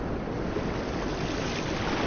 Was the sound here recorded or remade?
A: recorded